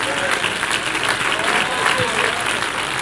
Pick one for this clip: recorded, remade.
recorded